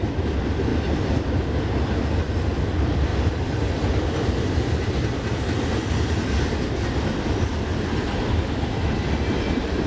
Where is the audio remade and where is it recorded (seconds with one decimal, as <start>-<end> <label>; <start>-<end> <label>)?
0.0-9.9 recorded